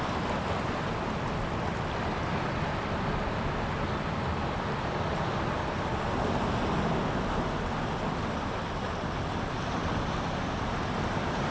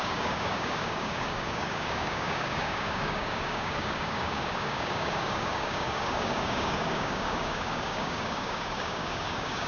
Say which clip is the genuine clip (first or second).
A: first